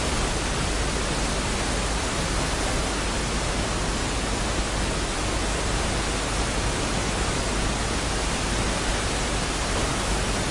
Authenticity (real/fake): real